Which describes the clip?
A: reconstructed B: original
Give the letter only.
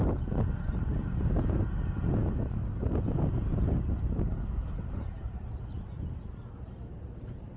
B